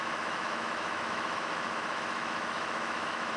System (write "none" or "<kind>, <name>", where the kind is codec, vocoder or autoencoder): autoencoder, DAC-VAE